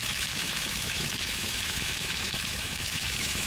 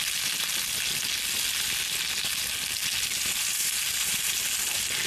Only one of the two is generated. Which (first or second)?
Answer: first